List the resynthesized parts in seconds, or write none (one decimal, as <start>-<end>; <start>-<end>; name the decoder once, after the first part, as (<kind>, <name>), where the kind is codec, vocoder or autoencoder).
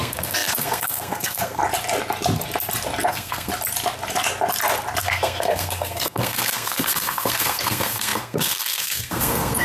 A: 0.0-1.6 (codec, SNAC); 3.1-3.5; 5.0-9.6